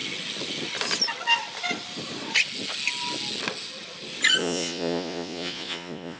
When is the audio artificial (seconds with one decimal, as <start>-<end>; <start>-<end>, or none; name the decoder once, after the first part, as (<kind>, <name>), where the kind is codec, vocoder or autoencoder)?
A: 4.4-6.2 (vocoder, Vocos)